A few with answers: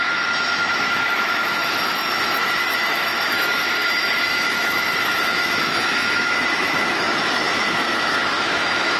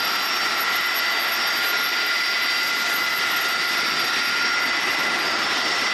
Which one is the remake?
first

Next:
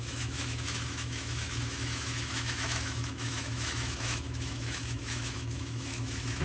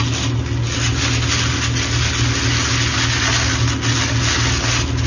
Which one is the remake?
first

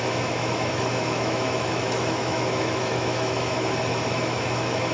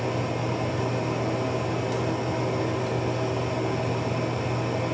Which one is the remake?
first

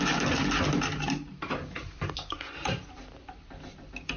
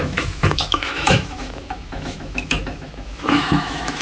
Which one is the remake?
second